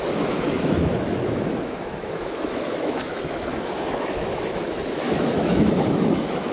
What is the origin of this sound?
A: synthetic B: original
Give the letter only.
A